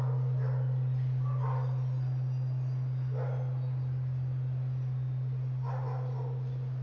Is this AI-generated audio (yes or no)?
no